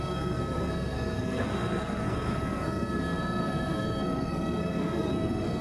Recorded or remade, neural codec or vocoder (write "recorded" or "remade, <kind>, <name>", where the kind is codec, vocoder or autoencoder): remade, codec, SNAC